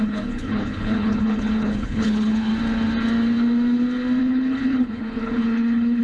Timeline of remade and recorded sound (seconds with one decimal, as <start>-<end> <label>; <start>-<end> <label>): 0.0-2.5 remade; 2.5-4.2 recorded; 4.2-6.0 remade